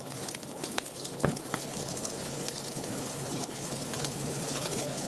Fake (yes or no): yes